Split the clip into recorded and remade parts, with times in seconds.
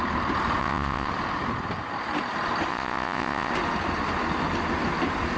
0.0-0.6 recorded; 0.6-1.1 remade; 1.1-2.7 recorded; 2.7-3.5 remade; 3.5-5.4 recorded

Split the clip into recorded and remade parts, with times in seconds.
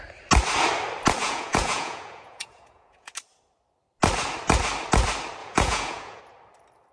0.0-1.2 recorded; 1.2-3.1 remade; 3.1-5.4 recorded; 5.4-6.2 remade; 6.2-6.9 recorded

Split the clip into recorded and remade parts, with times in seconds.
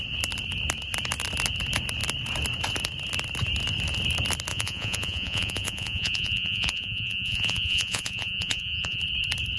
0.0-4.5 recorded; 4.5-9.0 remade; 9.0-9.6 recorded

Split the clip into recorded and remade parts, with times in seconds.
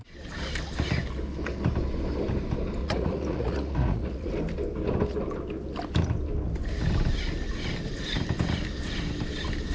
0.0-2.8 recorded; 2.8-4.3 remade; 4.3-9.7 recorded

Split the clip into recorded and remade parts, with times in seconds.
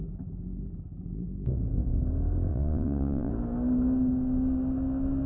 0.0-2.5 recorded; 2.5-3.3 remade; 3.3-5.3 recorded